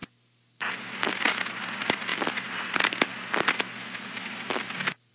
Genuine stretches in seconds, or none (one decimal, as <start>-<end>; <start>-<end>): 0.0-1.5; 2.1-5.1